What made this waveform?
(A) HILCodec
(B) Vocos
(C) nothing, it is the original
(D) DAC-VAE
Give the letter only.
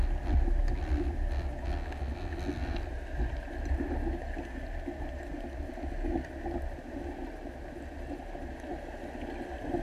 C